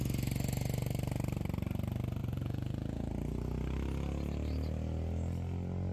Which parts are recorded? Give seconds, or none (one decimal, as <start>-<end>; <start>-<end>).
0.0-2.2; 3.1-5.9

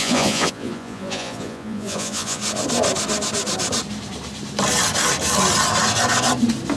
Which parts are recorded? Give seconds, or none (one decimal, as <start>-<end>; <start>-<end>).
2.4-6.8

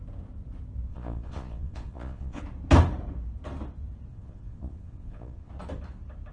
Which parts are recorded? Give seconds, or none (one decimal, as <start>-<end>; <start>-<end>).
0.0-0.9; 2.4-4.1; 5.5-6.3

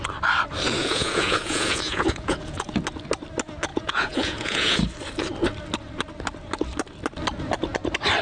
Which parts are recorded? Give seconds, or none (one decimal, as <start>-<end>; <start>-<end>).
0.0-0.8; 2.8-3.7; 4.8-8.2

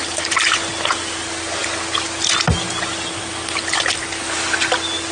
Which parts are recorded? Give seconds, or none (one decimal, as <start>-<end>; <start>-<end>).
0.0-5.1